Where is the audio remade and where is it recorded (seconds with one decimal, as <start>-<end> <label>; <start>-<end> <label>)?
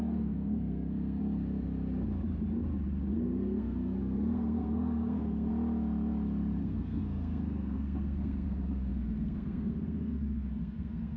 0.0-1.2 remade; 1.2-3.1 recorded; 3.1-5.5 remade; 5.5-6.6 recorded; 6.6-11.2 remade